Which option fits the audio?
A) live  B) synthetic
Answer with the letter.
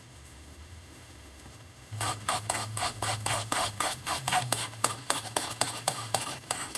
B